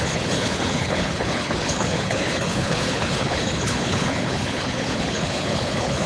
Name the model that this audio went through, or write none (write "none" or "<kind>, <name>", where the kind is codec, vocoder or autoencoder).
codec, HILCodec